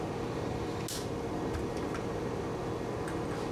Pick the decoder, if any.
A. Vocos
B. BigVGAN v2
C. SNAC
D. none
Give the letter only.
D